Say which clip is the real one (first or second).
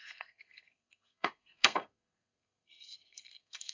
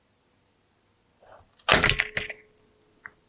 second